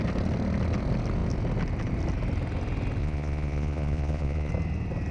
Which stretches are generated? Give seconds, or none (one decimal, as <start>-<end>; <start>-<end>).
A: 3.0-4.5